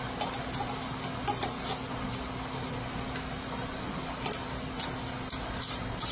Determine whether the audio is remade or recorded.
recorded